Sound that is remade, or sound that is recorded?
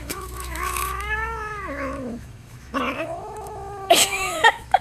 remade